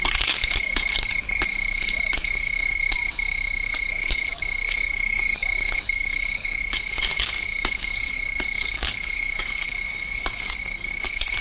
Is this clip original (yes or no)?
no